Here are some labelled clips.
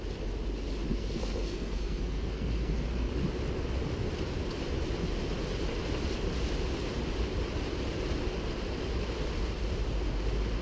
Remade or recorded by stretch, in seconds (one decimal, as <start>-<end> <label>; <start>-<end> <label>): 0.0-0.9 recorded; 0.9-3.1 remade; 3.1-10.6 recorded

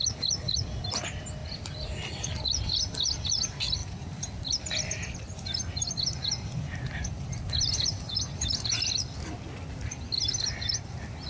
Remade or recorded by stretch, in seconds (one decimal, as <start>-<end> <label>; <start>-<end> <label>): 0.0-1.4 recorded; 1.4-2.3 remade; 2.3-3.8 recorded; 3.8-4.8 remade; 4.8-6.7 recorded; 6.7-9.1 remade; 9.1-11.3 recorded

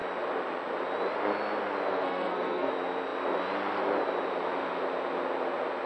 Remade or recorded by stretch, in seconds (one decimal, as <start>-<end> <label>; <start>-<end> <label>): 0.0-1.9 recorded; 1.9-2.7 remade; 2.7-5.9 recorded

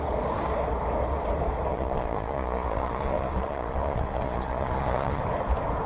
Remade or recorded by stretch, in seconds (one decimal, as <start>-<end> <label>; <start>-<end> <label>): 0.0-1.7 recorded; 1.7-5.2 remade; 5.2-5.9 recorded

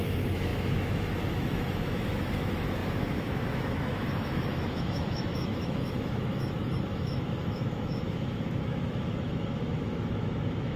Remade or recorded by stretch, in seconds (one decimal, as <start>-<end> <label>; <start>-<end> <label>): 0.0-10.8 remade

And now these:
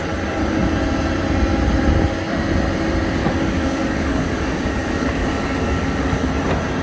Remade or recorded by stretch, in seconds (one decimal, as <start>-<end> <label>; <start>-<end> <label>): 0.0-3.2 recorded; 3.2-6.3 remade; 6.3-6.8 recorded

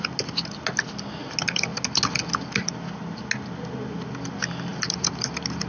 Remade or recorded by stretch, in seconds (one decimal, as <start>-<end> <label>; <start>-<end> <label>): 0.0-4.7 recorded; 4.7-5.3 remade; 5.3-5.7 recorded

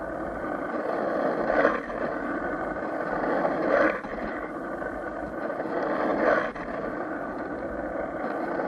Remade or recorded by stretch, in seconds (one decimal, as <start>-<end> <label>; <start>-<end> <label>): 0.0-1.9 recorded; 1.9-5.5 remade; 5.5-8.7 recorded